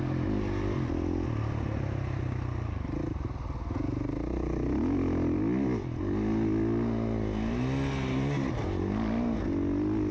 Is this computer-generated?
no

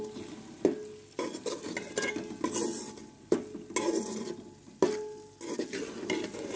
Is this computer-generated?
no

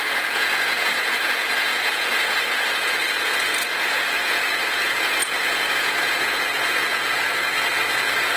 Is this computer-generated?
yes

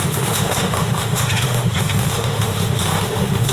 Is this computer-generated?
yes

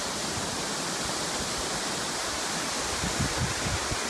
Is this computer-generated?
no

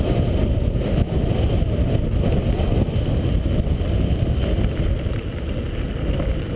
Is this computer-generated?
no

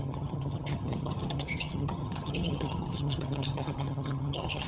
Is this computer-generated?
yes